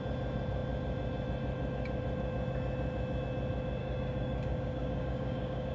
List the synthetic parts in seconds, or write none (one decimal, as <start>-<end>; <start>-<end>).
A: 3.8-5.7